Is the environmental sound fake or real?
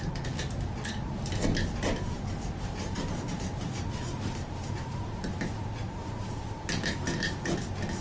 real